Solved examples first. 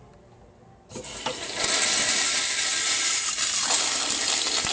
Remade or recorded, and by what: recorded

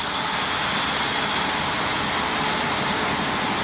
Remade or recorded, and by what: recorded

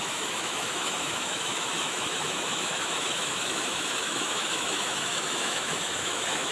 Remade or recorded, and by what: remade, autoencoder, DAC-VAE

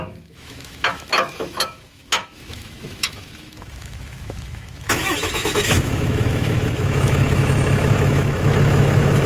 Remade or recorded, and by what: remade, autoencoder, DAC-VAE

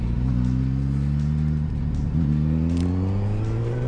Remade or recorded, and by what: recorded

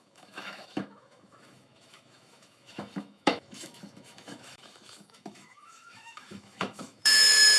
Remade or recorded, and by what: remade, autoencoder, DAC-VAE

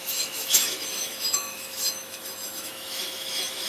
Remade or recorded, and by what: remade, autoencoder, DAC-VAE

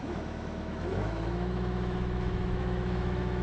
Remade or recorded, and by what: remade, autoencoder, DAC-VAE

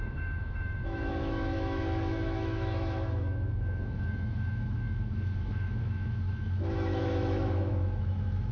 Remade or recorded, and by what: remade, autoencoder, DAC-VAE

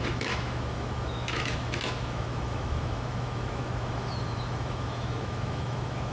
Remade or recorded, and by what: remade, autoencoder, DAC-VAE